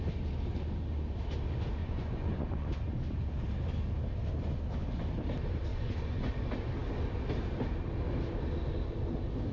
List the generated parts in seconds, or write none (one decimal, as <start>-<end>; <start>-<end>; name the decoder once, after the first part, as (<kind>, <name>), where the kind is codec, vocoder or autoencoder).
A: 1.8-2.7 (vocoder, Vocos); 5.7-6.3